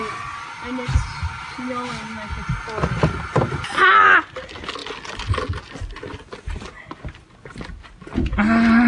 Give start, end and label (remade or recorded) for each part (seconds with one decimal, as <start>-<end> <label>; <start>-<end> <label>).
0.0-8.9 recorded